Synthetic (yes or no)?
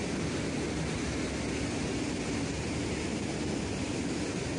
no